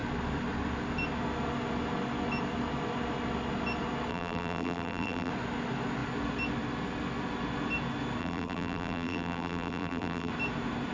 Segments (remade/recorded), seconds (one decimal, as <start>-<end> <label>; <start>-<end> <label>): 0.0-4.1 recorded; 4.1-5.3 remade; 5.3-8.2 recorded; 8.2-10.3 remade; 10.3-10.9 recorded